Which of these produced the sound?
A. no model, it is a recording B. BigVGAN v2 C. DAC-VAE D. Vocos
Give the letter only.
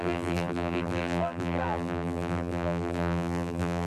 B